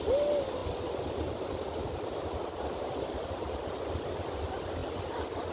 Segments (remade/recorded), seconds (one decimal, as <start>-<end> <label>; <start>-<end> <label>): 0.0-5.5 recorded